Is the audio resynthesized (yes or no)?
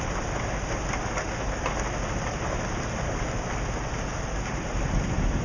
no